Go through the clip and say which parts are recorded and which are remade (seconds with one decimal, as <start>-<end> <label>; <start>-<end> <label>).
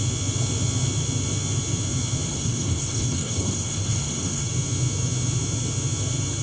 0.0-2.3 recorded; 2.3-4.5 remade; 4.5-6.4 recorded